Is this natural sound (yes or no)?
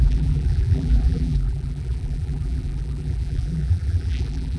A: no